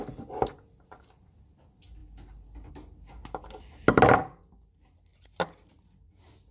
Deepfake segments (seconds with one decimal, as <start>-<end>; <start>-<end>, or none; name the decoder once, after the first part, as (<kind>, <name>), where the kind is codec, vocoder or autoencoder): none